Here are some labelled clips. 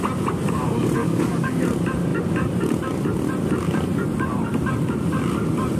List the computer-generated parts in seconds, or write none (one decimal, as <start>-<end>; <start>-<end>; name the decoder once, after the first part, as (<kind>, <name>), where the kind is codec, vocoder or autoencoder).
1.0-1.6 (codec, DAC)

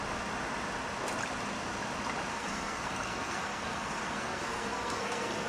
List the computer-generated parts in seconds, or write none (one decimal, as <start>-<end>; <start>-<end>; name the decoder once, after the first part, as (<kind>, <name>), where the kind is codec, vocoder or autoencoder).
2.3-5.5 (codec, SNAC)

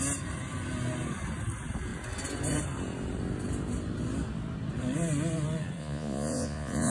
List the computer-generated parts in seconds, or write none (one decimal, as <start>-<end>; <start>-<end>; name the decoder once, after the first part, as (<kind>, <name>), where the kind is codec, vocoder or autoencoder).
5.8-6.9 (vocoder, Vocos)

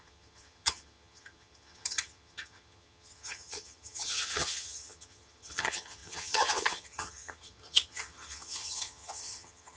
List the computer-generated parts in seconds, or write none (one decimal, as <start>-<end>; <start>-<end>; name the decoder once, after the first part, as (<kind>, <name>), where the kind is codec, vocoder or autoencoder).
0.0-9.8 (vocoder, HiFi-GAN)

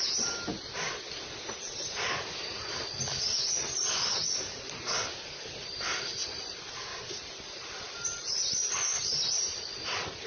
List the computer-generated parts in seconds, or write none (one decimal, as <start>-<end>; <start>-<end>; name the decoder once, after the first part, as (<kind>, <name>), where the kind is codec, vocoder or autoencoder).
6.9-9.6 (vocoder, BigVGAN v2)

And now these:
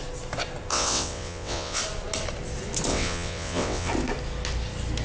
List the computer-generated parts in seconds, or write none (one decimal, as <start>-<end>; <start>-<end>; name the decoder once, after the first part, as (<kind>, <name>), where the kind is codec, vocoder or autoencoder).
0.7-1.8 (vocoder, WaveNeXt); 2.9-3.9

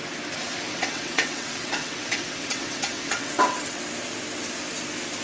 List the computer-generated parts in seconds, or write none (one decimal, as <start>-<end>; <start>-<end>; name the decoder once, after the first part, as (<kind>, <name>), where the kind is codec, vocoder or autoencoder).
0.7-3.8 (vocoder, WaveNeXt)